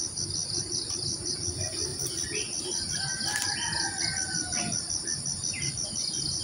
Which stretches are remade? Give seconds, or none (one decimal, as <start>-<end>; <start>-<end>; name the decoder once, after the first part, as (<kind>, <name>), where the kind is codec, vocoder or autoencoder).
none